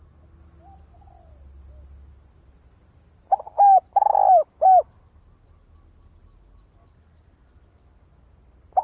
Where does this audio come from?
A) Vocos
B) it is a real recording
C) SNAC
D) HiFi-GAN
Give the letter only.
B